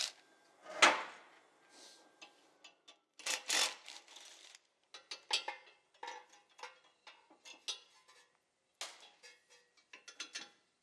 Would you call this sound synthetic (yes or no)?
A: no